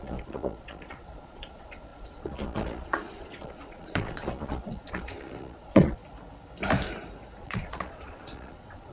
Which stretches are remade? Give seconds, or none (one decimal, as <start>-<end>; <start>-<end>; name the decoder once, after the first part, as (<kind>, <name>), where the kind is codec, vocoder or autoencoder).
0.0-6.0 (vocoder, Vocos); 7.4-8.9